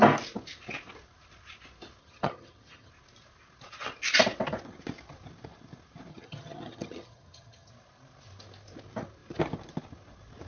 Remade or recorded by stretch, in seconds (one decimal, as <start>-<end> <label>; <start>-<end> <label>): 0.0-2.0 recorded; 2.0-2.9 remade; 2.9-6.1 recorded; 6.1-7.7 remade; 7.7-10.5 recorded